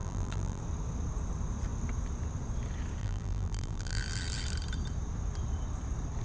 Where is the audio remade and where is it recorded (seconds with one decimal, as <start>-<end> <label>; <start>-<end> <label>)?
0.0-0.6 remade; 0.6-3.0 recorded; 3.0-4.0 remade; 4.0-6.2 recorded